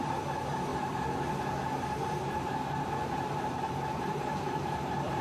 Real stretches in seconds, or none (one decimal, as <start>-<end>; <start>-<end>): none